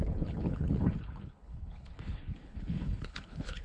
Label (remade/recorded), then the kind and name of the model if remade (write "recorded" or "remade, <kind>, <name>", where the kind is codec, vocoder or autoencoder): remade, codec, HILCodec